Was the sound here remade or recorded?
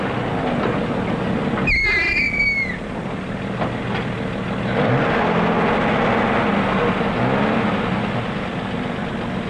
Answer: recorded